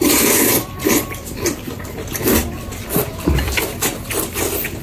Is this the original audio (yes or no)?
no